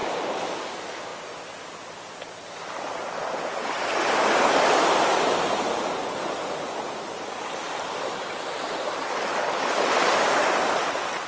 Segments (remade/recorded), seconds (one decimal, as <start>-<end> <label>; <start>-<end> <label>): 0.0-0.6 remade; 0.6-11.3 recorded